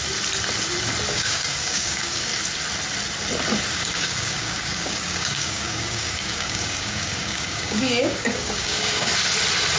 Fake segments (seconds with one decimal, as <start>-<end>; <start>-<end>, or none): 1.1-2.3; 3.7-9.1